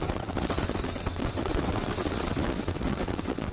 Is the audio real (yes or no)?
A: no